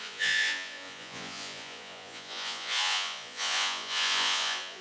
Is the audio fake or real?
fake